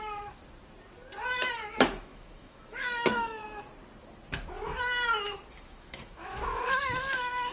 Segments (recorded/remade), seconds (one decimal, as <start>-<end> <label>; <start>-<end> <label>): 0.0-0.4 remade; 0.4-1.5 recorded; 1.5-3.4 remade; 3.4-5.5 recorded; 5.5-7.5 remade